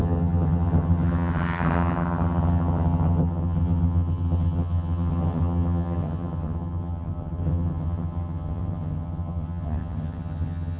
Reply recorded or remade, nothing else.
remade